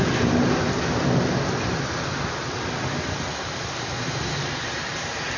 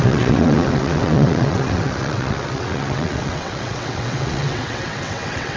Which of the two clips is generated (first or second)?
second